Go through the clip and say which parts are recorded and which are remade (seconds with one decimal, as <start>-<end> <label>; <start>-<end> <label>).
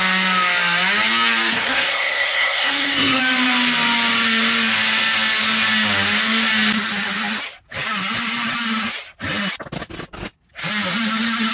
0.0-1.5 recorded; 1.5-3.2 remade; 3.2-11.5 recorded